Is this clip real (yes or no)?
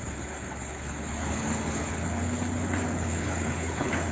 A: no